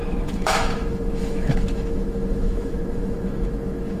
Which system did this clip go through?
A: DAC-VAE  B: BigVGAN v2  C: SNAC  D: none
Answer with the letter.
A